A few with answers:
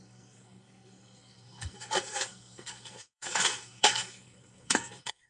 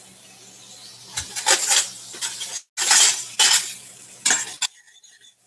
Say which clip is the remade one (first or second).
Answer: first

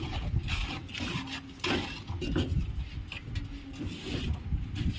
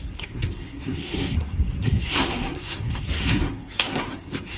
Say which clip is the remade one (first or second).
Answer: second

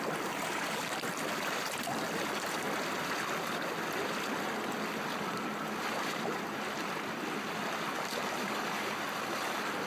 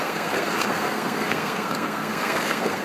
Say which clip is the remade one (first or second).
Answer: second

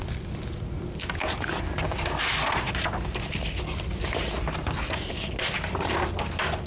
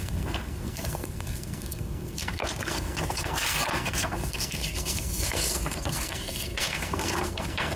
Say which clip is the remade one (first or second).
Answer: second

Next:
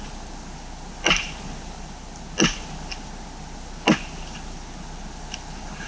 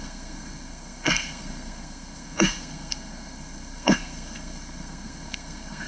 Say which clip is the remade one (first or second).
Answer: second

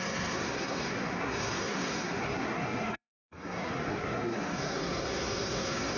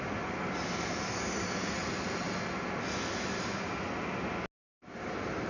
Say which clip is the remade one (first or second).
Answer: first